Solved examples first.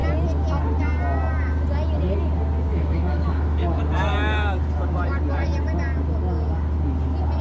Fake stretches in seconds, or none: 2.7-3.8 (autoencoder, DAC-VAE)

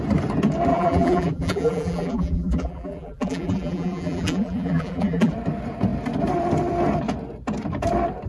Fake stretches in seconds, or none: 0.7-5.3 (vocoder, BigVGAN v2)

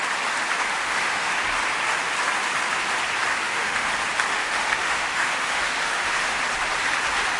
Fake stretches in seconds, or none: 0.8-1.3 (autoencoder, DAC-VAE); 3.3-3.9; 4.3-6.4

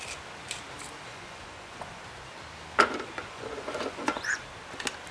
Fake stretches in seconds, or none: 1.1-2.0 (vocoder, Vocos); 3.2-4.4

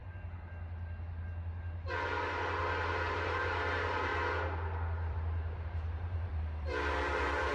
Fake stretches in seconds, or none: 1.9-4.1 (vocoder, BigVGAN v2); 5.1-6.3

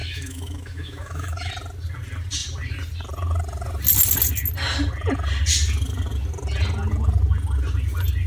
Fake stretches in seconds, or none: 0.0-1.5 (autoencoder, DAC-VAE)

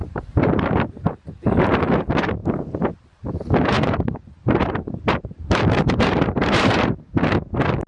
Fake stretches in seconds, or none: 0.0-1.1 (vocoder, BigVGAN v2); 2.4-7.1

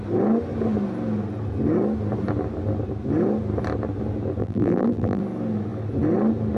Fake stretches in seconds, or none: 4.4-5.2 (vocoder, BigVGAN v2)